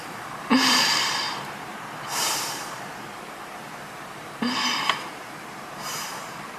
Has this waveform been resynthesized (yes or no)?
yes